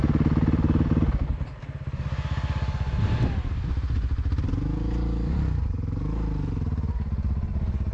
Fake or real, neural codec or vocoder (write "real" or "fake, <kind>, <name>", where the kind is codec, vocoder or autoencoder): real